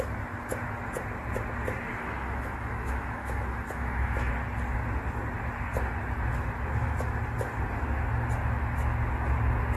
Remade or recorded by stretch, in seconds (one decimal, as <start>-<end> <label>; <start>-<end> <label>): 0.0-2.0 recorded; 2.0-4.3 remade; 4.3-9.8 recorded